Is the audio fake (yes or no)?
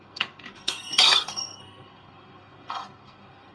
yes